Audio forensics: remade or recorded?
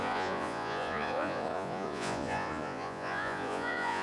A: remade